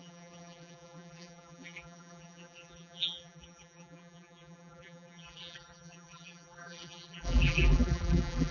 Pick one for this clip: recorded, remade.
remade